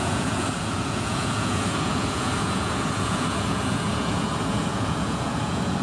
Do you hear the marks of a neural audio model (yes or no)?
yes